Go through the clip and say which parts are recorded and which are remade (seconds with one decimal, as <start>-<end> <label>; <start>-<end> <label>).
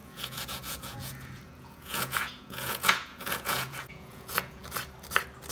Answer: 0.0-4.6 remade; 4.6-5.5 recorded